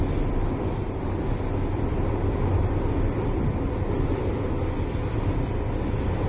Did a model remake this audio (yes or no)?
no